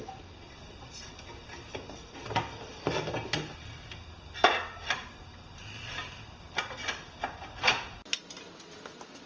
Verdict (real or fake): real